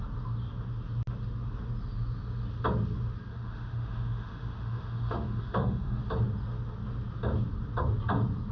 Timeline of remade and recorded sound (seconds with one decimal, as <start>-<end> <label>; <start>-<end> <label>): 0.0-3.3 recorded; 3.3-6.0 remade; 6.0-8.5 recorded